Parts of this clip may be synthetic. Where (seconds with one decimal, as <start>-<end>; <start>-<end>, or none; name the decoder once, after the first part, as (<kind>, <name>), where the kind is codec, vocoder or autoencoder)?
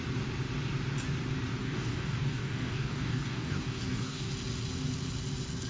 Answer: 1.6-4.3 (codec, DAC)